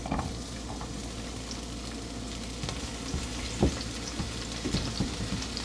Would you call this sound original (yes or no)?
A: yes